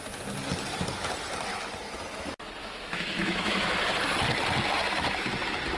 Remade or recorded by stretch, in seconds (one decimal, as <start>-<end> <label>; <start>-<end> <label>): 0.0-2.6 recorded; 2.6-3.7 remade; 3.7-5.8 recorded